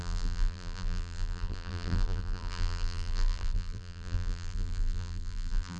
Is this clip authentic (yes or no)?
no